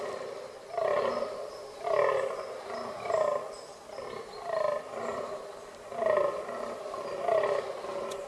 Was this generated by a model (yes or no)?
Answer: no